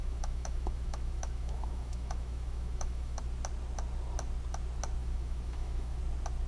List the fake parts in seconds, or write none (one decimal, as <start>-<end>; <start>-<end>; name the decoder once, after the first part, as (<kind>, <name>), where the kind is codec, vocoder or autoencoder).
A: 0.0-3.2 (autoencoder, DAC-VAE); 5.0-6.0